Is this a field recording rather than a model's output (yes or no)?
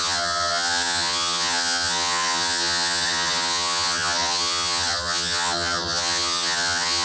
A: no